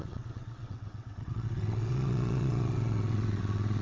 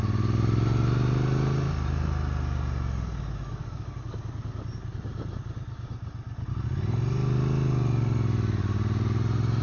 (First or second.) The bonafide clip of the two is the second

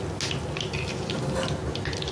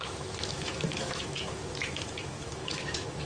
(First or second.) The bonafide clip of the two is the first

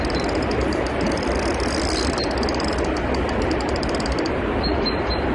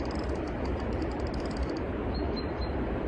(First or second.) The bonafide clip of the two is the first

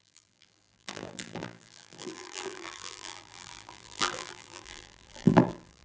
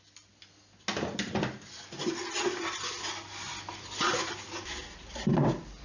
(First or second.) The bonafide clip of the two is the second